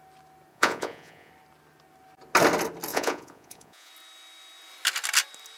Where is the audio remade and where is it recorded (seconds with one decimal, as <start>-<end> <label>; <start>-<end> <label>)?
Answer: 0.0-0.5 recorded; 0.5-1.3 remade; 1.3-2.9 recorded; 2.9-3.9 remade; 3.9-5.6 recorded